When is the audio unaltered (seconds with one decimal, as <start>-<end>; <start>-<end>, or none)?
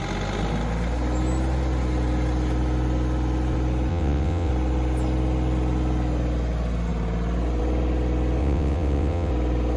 0.0-3.9; 4.5-8.4; 9.3-9.8